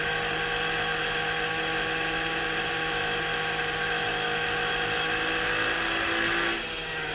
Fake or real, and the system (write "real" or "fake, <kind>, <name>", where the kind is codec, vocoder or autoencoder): real